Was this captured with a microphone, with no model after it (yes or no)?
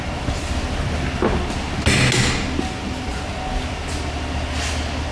yes